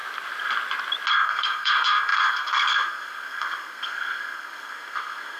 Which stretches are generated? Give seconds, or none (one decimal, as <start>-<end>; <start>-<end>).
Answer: 1.1-5.4

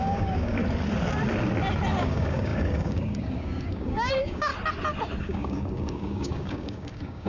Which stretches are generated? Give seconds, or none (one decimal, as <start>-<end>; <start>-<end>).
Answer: 0.0-0.6; 2.0-4.5; 5.2-7.3

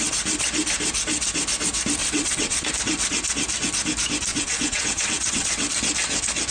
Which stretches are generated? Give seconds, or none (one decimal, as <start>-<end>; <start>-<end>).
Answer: 2.0-2.7; 4.3-5.7

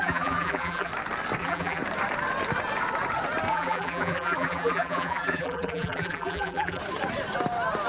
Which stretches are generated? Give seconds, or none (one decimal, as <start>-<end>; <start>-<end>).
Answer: 0.0-0.9; 1.4-1.8; 3.5-6.8